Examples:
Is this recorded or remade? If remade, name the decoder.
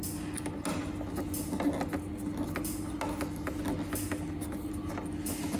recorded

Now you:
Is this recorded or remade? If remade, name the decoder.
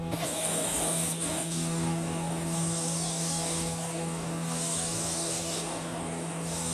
remade, codec, DAC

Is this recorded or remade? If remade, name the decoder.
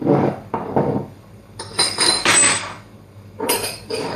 remade, codec, DAC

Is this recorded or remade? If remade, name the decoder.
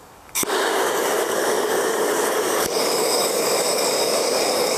remade, codec, DAC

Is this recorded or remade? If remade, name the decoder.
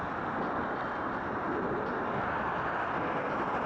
recorded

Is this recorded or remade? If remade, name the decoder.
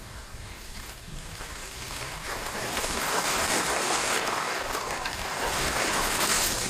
remade, codec, DAC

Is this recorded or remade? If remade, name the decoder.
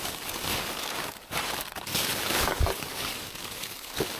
remade, codec, DAC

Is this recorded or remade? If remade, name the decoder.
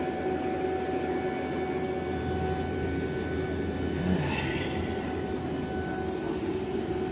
recorded